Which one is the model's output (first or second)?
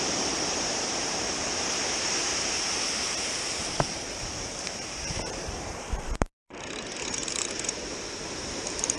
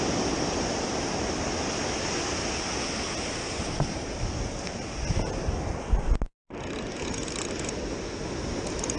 first